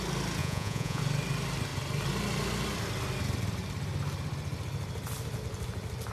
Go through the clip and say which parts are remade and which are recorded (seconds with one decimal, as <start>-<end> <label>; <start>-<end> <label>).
0.0-0.4 recorded; 0.4-1.0 remade; 1.0-6.1 recorded